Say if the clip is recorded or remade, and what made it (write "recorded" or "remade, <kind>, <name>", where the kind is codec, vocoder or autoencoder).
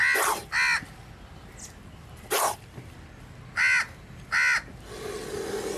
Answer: recorded